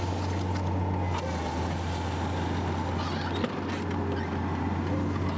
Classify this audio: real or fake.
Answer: real